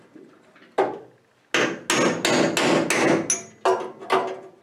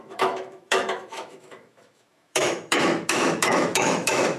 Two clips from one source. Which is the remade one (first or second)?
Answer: second